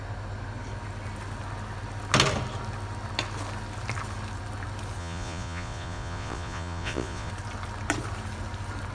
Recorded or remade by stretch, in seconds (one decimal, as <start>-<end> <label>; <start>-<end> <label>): 0.0-5.0 recorded; 5.0-7.3 remade; 7.3-8.9 recorded